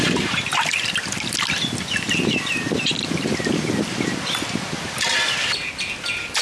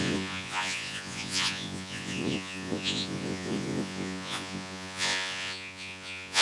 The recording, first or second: first